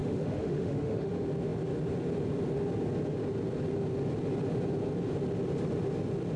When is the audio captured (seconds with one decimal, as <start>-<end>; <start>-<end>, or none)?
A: 1.1-6.4